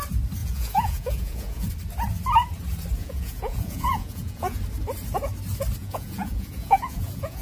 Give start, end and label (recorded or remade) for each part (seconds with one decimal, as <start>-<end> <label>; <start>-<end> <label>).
0.0-0.4 recorded; 0.4-1.7 remade; 1.7-3.0 recorded; 3.0-4.6 remade; 4.6-5.8 recorded; 5.8-7.4 remade